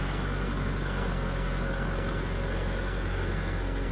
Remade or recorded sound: remade